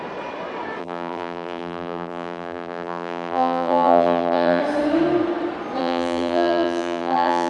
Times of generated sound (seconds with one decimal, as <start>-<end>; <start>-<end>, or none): 0.8-4.6; 5.8-7.5